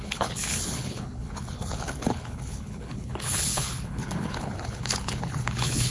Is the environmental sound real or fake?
fake